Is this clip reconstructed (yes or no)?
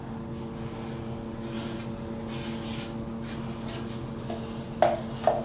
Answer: no